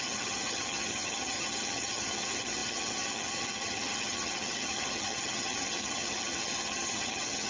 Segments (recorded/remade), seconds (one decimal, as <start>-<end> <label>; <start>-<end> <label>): 0.0-7.5 remade